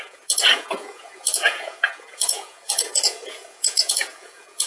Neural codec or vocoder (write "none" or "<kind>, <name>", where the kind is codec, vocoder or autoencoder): vocoder, Vocos